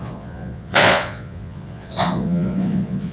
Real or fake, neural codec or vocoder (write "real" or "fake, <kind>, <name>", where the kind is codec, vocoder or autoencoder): fake, vocoder, Vocos